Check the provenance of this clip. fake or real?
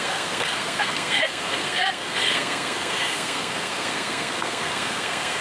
fake